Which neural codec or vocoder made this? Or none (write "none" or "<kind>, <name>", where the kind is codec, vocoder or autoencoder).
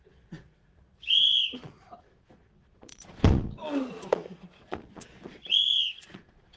vocoder, Vocos